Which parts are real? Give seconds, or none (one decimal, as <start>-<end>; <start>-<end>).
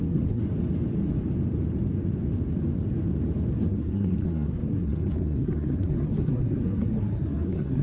0.4-3.5